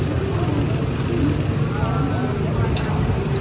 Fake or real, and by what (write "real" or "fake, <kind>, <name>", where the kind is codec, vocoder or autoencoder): real